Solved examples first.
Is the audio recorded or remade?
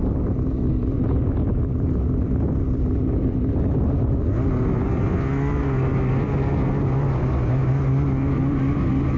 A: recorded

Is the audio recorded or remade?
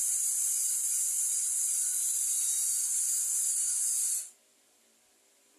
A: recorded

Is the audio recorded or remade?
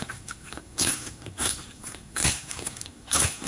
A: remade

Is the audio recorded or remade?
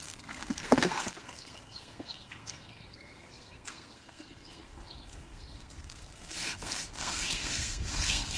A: remade